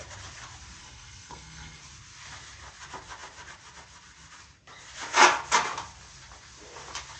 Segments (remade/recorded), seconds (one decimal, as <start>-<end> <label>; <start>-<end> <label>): 0.0-0.8 recorded; 0.8-1.8 remade; 1.8-7.2 recorded